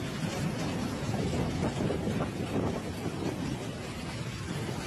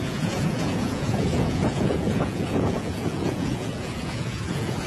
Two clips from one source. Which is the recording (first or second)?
first